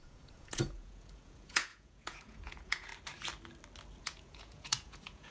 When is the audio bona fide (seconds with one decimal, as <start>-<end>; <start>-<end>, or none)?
2.9-4.0